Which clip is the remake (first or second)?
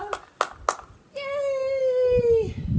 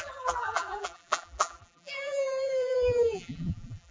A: second